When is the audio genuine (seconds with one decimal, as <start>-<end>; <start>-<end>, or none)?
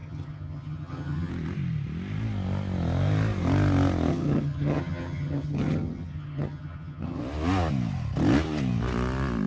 1.3-4.1; 7.2-9.5